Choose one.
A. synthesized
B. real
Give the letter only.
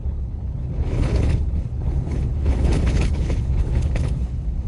A